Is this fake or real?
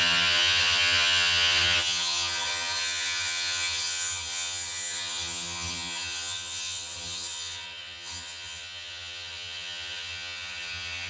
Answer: fake